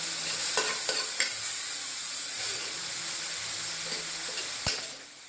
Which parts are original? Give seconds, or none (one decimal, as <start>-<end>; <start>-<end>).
0.0-2.0; 3.0-5.3